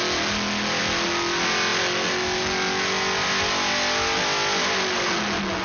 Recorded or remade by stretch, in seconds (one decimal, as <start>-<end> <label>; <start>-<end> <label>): 0.0-5.6 recorded